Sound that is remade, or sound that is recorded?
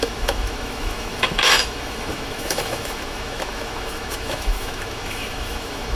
remade